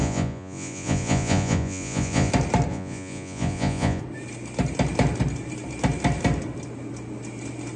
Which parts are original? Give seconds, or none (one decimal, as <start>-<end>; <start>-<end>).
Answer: 2.3-2.7; 4.0-7.8